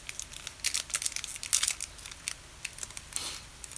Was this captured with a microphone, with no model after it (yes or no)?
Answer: yes